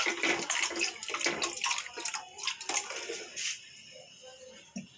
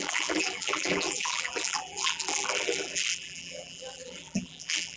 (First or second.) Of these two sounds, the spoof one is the second